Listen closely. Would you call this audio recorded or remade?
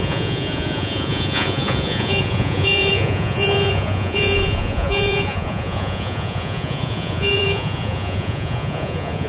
remade